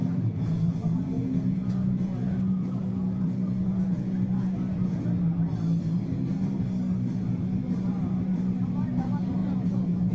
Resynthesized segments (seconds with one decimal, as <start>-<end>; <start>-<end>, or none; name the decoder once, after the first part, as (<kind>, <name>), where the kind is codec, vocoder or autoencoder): 0.0-5.0 (vocoder, Vocos); 9.4-10.1